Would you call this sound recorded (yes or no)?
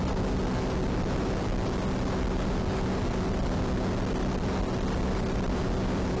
yes